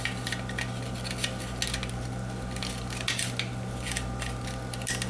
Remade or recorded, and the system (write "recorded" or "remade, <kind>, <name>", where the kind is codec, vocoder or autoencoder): recorded